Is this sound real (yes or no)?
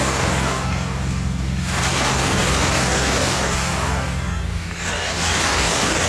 no